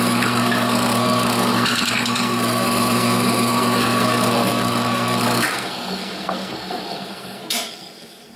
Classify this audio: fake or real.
fake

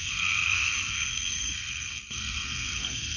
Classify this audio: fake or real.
fake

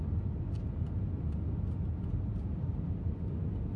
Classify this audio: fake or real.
real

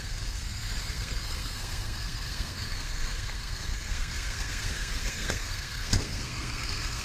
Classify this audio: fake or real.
fake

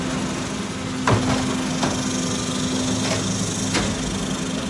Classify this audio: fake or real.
real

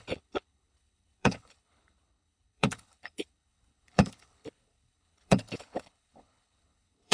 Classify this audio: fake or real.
fake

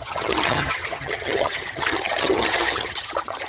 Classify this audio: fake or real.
fake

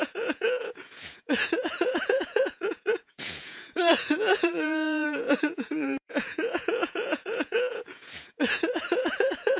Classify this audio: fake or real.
fake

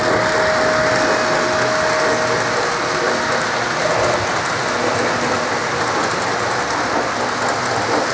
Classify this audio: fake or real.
real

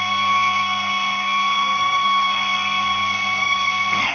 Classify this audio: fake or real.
fake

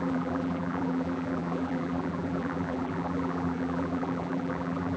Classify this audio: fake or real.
fake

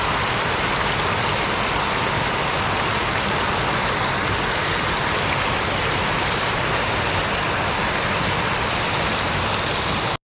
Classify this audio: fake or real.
real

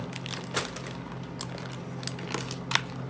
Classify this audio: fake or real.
real